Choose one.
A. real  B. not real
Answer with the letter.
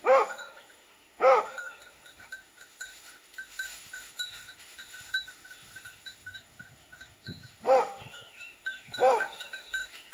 B